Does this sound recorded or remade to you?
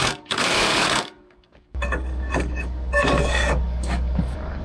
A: remade